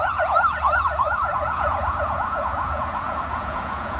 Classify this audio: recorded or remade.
remade